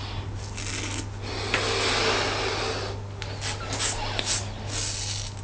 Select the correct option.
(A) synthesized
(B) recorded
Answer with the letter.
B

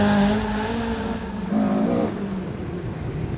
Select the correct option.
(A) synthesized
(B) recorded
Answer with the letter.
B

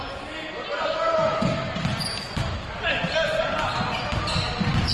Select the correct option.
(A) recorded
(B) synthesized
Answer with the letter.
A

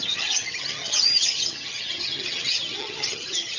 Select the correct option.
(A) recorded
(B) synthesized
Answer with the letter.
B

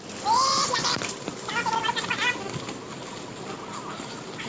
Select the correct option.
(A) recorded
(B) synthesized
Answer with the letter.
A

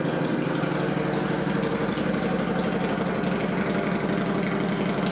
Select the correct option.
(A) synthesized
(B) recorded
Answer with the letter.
B